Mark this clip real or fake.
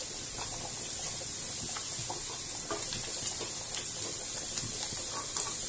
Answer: real